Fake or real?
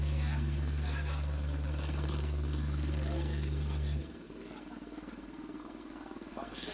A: fake